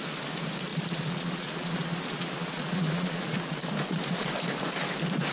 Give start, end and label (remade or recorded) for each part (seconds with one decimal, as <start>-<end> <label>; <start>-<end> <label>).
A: 0.0-0.7 recorded; 0.7-3.5 remade; 3.5-5.3 recorded